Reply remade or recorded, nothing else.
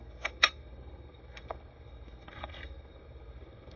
remade